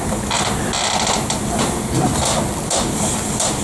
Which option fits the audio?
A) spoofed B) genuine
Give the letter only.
B